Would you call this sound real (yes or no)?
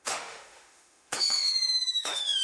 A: no